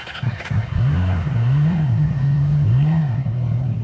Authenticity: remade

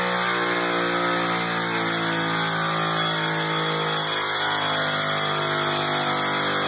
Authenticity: recorded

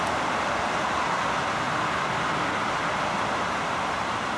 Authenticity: recorded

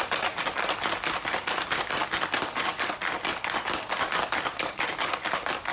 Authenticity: recorded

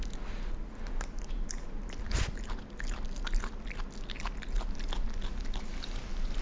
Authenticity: recorded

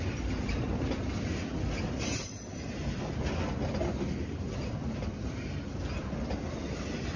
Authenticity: recorded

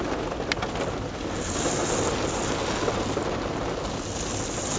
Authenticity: recorded